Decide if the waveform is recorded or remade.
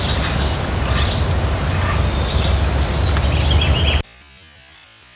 recorded